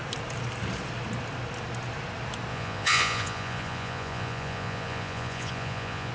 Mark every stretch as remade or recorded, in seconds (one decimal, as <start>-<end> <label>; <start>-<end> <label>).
0.0-2.5 recorded; 2.5-6.1 remade